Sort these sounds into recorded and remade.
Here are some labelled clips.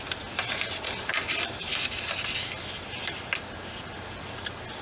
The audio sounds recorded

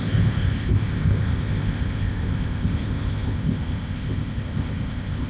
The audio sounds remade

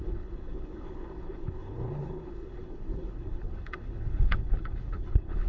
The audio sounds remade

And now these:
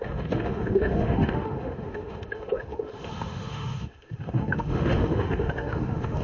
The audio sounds remade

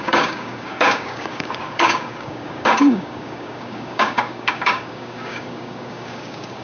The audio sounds remade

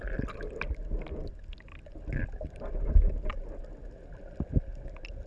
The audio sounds recorded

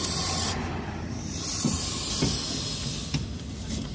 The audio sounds recorded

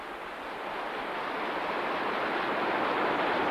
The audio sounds recorded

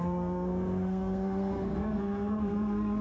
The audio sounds remade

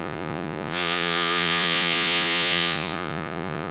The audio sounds remade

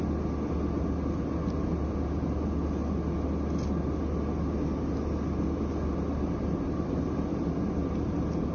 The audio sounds recorded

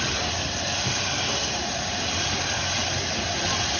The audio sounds recorded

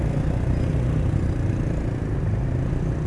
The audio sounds recorded